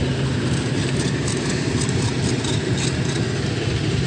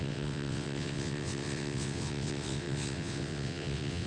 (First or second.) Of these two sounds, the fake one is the second